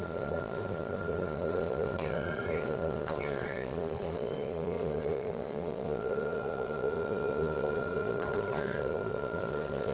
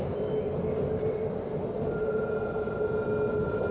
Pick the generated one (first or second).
first